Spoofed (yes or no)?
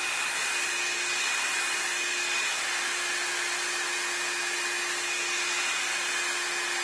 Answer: no